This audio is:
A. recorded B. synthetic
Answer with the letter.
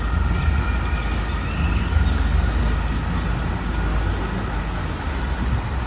A